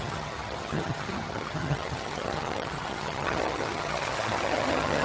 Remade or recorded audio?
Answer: remade